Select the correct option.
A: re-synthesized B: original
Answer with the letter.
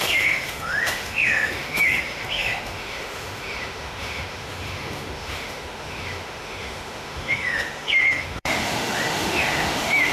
A